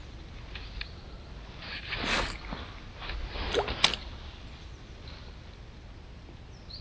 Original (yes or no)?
yes